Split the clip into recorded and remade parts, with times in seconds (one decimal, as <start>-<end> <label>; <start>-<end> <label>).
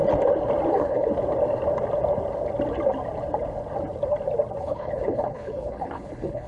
0.0-0.7 recorded; 0.7-1.1 remade; 1.1-4.6 recorded; 4.6-6.5 remade